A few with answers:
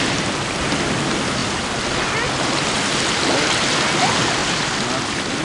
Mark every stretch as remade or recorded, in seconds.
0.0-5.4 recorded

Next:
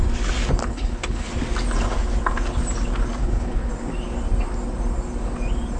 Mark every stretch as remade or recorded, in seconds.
0.0-0.6 recorded; 0.6-1.3 remade; 1.3-3.2 recorded; 3.2-3.7 remade; 3.7-5.8 recorded

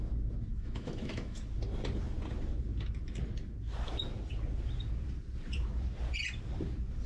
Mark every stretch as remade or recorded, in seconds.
0.0-0.5 recorded; 0.5-1.4 remade; 1.4-7.1 recorded

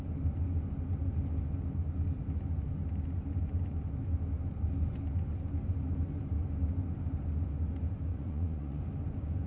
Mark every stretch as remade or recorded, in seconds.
0.0-8.1 recorded; 8.1-8.8 remade; 8.8-9.5 recorded